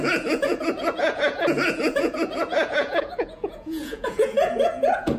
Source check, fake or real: fake